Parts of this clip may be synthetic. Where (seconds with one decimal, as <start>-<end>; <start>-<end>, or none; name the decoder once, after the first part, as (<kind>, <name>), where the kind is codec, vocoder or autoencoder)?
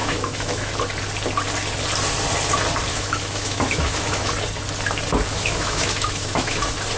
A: 0.0-0.7 (autoencoder, DAC-VAE); 2.9-4.3; 5.3-6.6